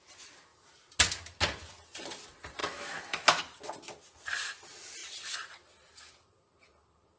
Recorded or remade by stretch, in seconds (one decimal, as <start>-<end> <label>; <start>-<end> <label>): 0.0-2.6 recorded; 2.6-3.4 remade; 3.4-7.2 recorded